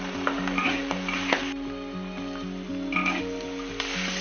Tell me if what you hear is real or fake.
real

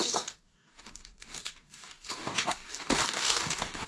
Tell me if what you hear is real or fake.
fake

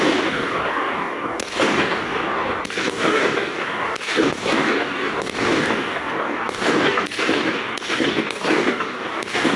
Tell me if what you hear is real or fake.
fake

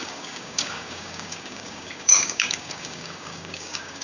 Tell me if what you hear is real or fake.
fake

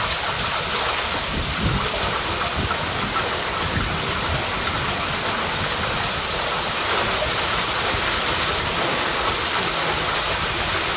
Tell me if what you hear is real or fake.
real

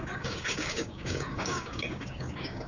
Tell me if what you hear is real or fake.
fake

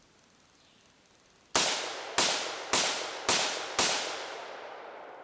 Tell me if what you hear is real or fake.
real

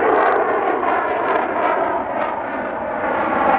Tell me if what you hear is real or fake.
real